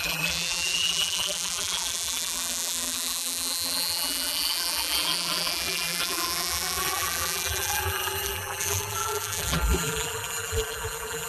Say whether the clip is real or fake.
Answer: fake